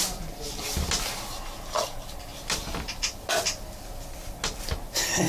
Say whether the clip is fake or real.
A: real